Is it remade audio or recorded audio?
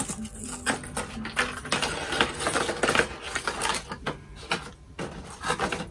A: recorded